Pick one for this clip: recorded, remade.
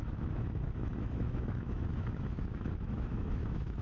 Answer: remade